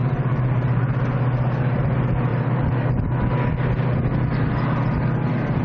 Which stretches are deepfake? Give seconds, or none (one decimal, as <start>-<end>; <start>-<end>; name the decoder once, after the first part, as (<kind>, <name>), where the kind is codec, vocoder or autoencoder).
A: 0.0-1.0 (vocoder, BigVGAN v2); 2.3-2.9